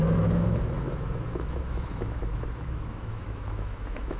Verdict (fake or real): fake